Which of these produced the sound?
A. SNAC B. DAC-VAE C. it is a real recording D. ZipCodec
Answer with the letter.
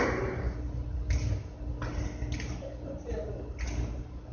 C